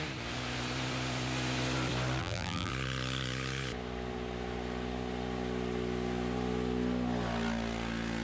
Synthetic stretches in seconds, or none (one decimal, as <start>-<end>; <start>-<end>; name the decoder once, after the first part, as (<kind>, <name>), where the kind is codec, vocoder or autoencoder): 2.2-2.7 (vocoder, BigVGAN v2)